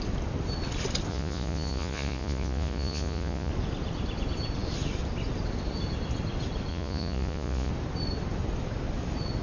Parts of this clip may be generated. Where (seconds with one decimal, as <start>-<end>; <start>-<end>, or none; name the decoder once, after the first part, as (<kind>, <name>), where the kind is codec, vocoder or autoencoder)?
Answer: 1.1-3.5 (vocoder, Vocos); 6.7-7.7